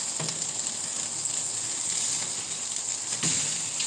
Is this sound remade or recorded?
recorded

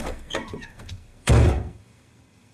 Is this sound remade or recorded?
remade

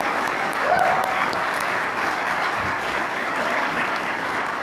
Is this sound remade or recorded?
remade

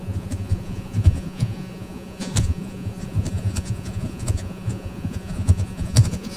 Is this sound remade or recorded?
remade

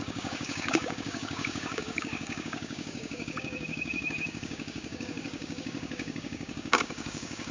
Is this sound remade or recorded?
remade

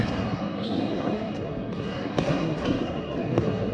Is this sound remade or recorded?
remade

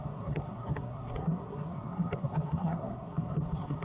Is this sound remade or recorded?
remade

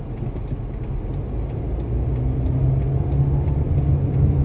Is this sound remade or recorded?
recorded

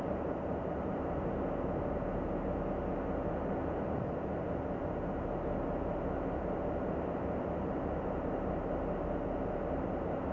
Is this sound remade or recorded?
recorded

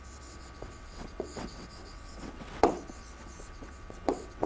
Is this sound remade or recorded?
remade